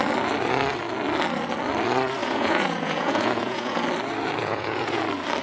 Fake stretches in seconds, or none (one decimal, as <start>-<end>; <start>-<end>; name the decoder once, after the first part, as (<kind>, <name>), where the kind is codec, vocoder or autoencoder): 2.2-3.8 (vocoder, Vocos); 4.4-5.0